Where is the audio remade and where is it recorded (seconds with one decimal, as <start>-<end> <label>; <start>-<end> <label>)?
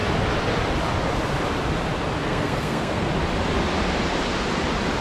0.0-2.3 recorded; 2.3-3.1 remade; 3.1-5.0 recorded